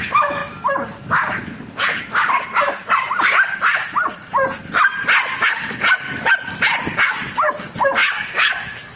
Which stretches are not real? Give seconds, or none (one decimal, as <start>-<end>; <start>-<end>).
8.0-9.0